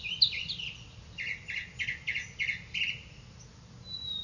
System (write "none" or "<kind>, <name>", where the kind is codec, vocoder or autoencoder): none